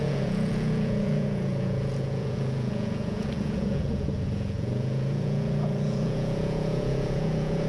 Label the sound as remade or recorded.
remade